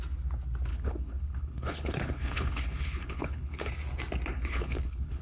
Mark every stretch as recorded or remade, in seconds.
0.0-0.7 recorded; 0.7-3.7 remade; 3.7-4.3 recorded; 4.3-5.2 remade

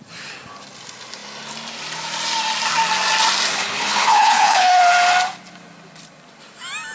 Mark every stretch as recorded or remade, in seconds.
0.0-3.5 recorded; 3.5-4.8 remade; 4.8-6.9 recorded

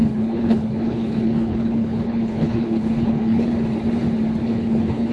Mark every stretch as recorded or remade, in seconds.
0.0-3.5 remade; 3.5-4.4 recorded; 4.4-5.1 remade